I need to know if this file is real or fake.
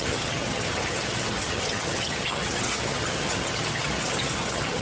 fake